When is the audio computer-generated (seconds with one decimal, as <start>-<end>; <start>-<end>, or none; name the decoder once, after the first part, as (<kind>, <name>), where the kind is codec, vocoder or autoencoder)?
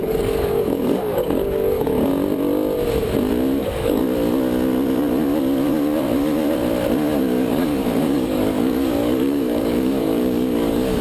0.0-2.1 (codec, DAC); 3.6-4.0; 7.2-11.0